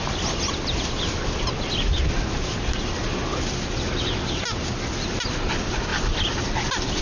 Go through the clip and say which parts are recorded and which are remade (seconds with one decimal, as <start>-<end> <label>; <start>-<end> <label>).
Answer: 0.0-7.0 recorded

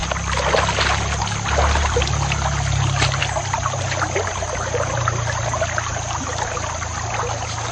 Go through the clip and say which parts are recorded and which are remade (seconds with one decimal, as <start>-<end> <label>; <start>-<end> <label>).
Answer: 0.0-7.7 recorded

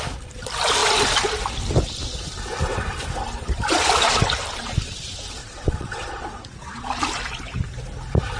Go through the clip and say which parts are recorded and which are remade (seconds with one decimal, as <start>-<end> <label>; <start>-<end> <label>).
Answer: 0.0-5.4 recorded; 5.4-6.9 remade; 6.9-8.4 recorded

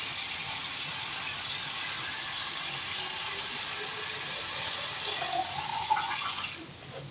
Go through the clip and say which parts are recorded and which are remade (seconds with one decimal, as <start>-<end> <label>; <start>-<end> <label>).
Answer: 0.0-5.7 recorded; 5.7-6.5 remade; 6.5-7.1 recorded

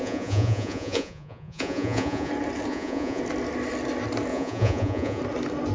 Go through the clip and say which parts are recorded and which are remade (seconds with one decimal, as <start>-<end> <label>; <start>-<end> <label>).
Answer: 0.0-2.3 remade; 2.3-2.7 recorded; 2.7-3.2 remade; 3.2-4.3 recorded; 4.3-5.2 remade; 5.2-5.7 recorded

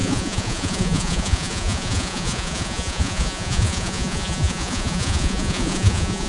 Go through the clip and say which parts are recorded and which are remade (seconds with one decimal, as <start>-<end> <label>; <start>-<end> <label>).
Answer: 0.0-6.3 remade